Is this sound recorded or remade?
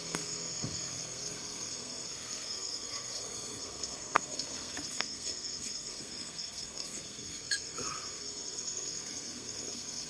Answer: remade